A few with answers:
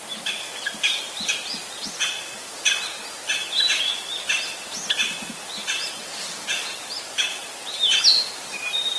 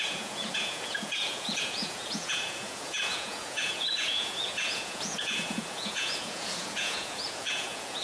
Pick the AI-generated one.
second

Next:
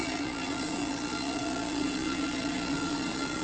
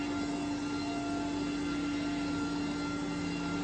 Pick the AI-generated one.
first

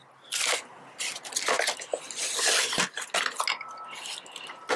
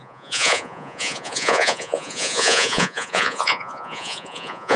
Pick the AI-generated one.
second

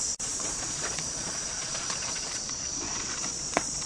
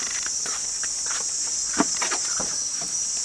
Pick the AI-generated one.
first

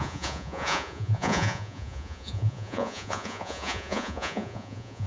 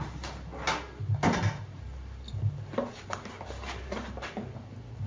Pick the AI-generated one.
first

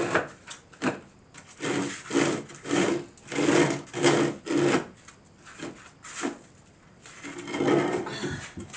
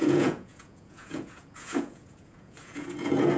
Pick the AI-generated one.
second